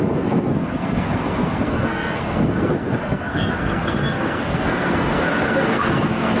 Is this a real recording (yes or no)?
no